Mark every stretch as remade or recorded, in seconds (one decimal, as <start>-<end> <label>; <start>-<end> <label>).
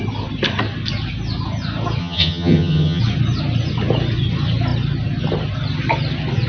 0.0-2.0 recorded; 2.0-3.0 remade; 3.0-6.5 recorded